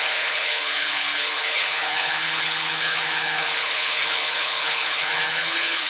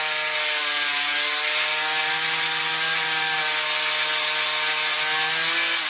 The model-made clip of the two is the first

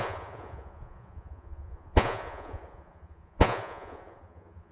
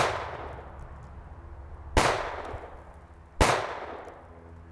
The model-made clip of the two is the first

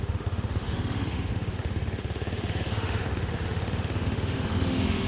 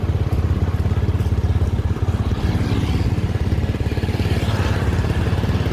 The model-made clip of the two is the first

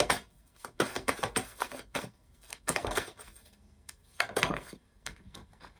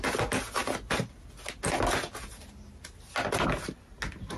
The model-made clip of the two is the first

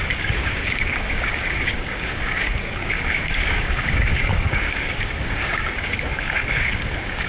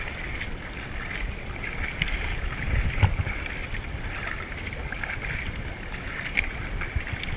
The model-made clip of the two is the first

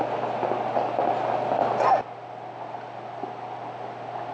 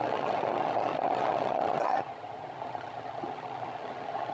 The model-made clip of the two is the second